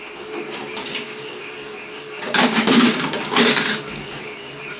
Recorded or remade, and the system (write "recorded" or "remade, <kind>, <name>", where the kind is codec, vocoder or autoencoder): remade, codec, DAC